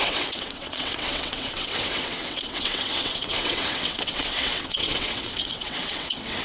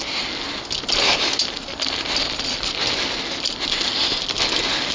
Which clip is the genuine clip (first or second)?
second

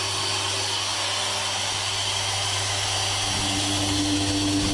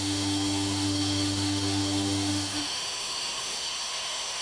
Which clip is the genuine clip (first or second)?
first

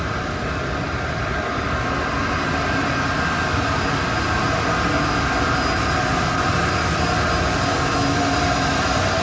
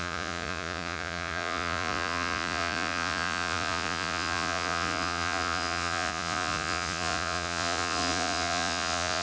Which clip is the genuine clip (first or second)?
first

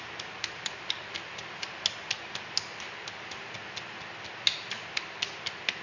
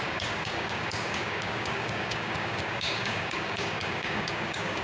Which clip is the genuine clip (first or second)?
first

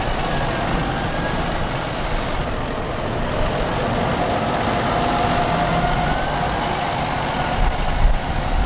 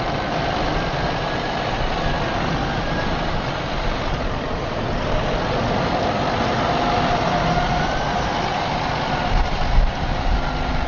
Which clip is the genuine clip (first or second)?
first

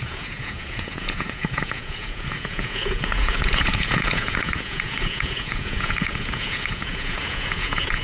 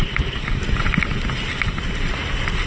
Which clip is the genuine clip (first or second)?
second